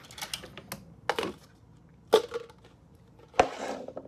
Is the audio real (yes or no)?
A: yes